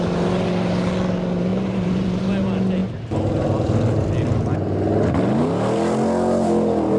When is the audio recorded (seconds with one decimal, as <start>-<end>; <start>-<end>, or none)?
0.0-1.5; 2.2-7.0

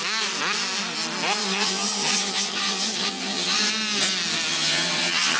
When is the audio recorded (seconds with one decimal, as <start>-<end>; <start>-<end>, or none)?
0.0-1.4; 3.7-4.5

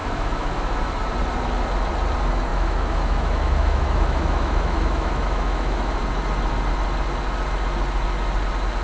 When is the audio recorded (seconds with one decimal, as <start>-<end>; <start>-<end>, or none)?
0.8-2.5; 6.0-8.8

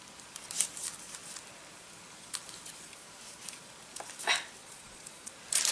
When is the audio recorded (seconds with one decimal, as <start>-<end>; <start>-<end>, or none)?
0.0-4.6; 5.3-5.7

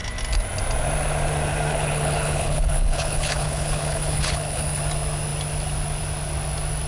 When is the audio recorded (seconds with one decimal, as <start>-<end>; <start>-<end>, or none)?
0.0-1.7; 4.8-6.9